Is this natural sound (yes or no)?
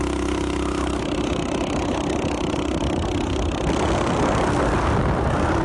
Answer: yes